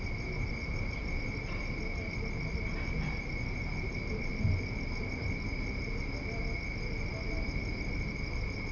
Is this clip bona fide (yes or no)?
yes